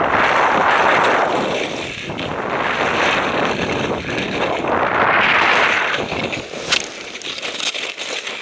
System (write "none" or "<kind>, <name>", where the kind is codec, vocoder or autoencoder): none